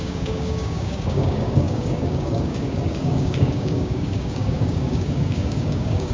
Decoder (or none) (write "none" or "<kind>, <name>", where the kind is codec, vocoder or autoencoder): codec, DAC